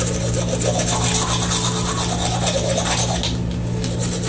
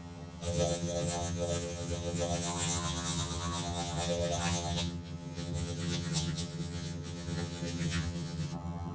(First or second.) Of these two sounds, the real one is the first